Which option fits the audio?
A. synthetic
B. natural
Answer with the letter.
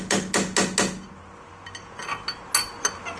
B